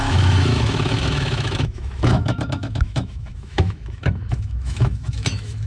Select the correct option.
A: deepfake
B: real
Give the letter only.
A